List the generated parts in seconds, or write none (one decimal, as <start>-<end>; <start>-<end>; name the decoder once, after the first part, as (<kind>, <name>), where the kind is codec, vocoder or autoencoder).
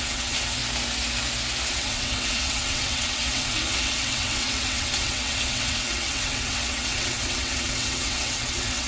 0.0-0.6 (vocoder, WaveNeXt); 1.7-8.9